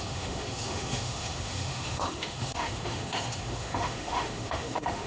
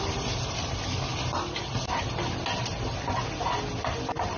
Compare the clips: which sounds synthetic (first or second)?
first